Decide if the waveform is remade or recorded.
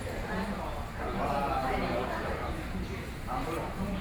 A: remade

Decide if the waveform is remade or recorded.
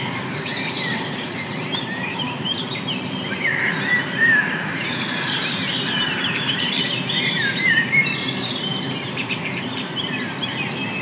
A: remade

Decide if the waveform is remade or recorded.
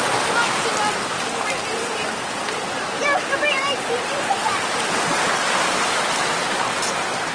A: recorded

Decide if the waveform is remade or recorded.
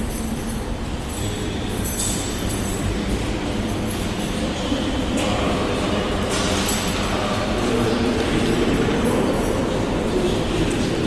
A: remade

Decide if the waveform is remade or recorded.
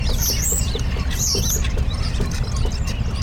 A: remade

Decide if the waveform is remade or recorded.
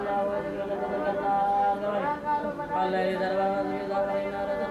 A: recorded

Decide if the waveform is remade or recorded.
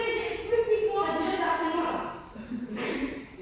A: recorded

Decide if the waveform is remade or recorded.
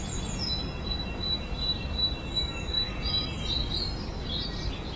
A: recorded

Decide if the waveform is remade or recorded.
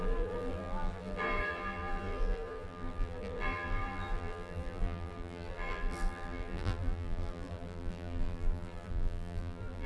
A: remade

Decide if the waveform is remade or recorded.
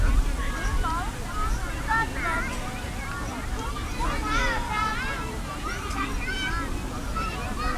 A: recorded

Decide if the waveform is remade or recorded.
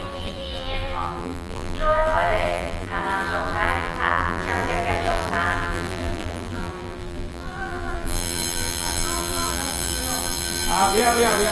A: remade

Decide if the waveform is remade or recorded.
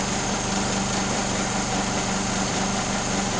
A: remade